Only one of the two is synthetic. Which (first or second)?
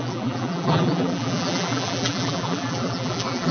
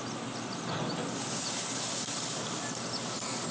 first